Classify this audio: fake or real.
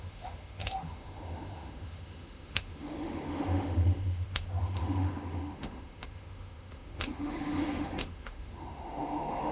fake